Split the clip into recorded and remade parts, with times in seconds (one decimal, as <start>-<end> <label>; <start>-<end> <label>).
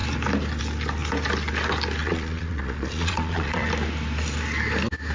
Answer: 0.0-2.0 recorded; 2.0-3.7 remade; 3.7-5.1 recorded